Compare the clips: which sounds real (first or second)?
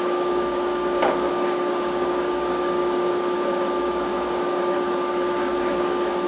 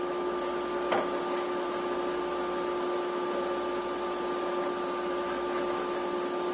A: second